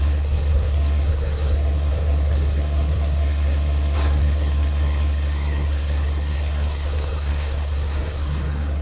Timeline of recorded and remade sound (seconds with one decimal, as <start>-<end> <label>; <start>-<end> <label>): 0.0-8.8 remade